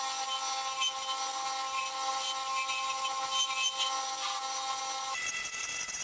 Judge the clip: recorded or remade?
recorded